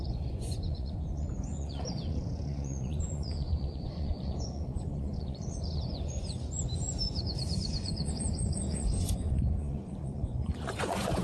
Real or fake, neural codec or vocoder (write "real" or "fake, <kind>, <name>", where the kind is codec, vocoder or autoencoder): fake, vocoder, Vocos